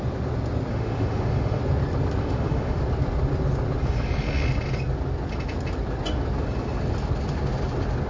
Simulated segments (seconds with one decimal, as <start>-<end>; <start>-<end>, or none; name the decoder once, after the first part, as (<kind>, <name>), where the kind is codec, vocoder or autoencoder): 0.7-1.6 (autoencoder, DAC-VAE); 2.2-2.8